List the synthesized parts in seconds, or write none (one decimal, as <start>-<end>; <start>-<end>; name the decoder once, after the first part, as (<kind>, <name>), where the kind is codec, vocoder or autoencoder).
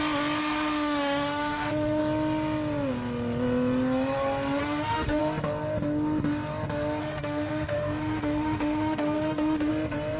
0.4-2.0 (autoencoder, DAC-VAE); 4.6-5.2; 7.0-9.7